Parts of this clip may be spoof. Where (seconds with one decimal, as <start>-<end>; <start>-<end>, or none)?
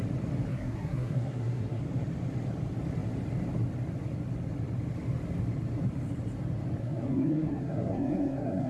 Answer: 0.5-1.8; 6.8-8.7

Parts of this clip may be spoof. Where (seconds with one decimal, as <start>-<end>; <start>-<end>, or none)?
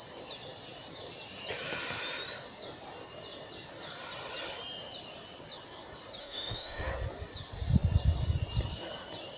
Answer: 6.2-6.9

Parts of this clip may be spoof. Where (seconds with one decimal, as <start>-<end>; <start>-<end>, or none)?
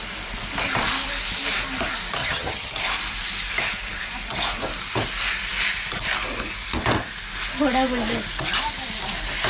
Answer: 2.2-2.7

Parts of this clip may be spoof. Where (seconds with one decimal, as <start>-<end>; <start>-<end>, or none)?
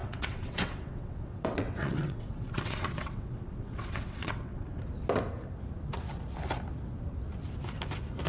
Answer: 0.0-4.8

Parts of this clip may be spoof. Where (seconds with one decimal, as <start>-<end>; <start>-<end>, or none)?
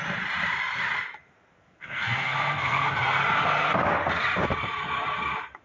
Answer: 1.5-2.9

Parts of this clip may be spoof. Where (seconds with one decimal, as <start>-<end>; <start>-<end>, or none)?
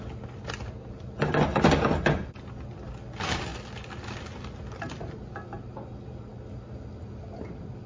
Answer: none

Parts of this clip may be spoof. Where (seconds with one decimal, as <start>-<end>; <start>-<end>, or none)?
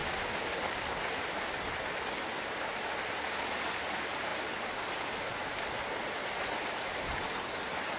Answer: none